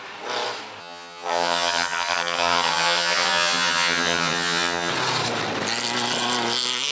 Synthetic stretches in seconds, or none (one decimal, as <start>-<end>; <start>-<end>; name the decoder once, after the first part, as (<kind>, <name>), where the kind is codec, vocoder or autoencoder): 0.8-4.9 (vocoder, HiFi-GAN)